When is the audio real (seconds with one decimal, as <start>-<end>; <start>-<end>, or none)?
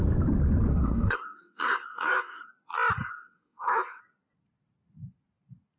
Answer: 0.0-0.7; 2.5-3.0; 4.0-5.8